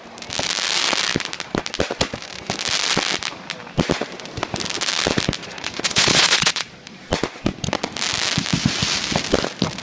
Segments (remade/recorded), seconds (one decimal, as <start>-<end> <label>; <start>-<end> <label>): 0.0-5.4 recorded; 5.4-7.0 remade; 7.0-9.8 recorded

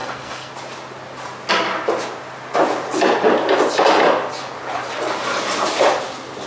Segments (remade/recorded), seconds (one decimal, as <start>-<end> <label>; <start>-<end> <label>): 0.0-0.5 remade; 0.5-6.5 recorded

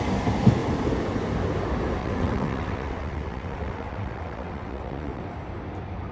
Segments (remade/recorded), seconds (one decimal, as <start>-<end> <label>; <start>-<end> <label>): 0.0-2.0 recorded; 2.0-5.2 remade; 5.2-6.1 recorded

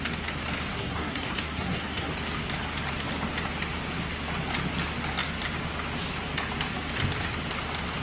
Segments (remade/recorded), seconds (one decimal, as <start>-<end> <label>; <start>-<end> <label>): 0.0-0.7 recorded; 0.7-2.1 remade; 2.1-8.0 recorded

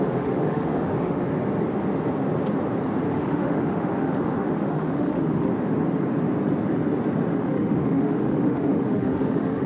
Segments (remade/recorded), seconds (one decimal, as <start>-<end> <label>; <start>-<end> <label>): 0.0-1.3 remade; 1.3-3.1 recorded; 3.1-5.5 remade; 5.5-7.3 recorded; 7.3-9.7 remade

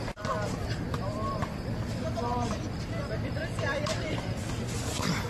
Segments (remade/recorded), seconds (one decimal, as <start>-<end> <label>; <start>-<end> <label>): 0.0-5.3 recorded

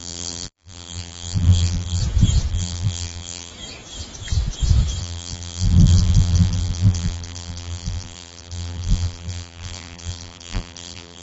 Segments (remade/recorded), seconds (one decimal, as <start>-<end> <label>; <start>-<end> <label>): 0.0-2.0 remade; 2.0-2.5 recorded; 2.5-3.5 remade; 3.5-5.0 recorded; 5.0-11.2 remade